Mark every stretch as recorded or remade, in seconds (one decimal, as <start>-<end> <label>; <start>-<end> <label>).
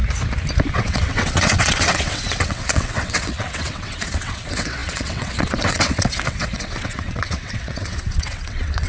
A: 0.0-0.7 recorded; 0.7-8.9 remade